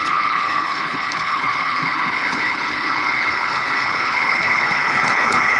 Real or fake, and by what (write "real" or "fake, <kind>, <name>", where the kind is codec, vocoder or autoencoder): fake, codec, HILCodec